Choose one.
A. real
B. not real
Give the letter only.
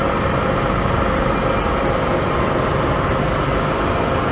A